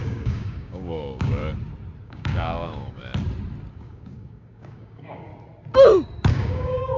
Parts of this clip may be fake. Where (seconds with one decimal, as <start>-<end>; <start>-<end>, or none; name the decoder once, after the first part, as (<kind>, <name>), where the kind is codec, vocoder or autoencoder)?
0.0-1.4 (codec, DAC); 2.0-3.0; 3.7-5.3; 6.3-7.0